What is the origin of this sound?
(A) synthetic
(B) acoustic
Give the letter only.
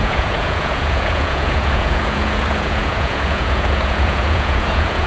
A